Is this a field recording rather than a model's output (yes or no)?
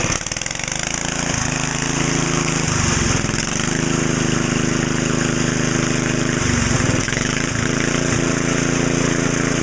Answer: yes